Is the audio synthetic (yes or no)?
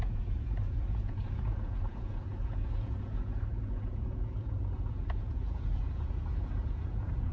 yes